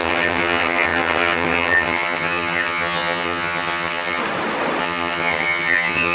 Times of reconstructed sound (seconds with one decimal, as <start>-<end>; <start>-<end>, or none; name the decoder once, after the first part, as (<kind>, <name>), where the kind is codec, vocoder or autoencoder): 0.0-4.2 (vocoder, HiFi-GAN); 4.8-6.1